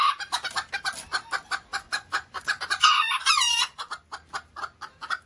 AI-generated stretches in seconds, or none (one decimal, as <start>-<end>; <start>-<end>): 1.7-3.9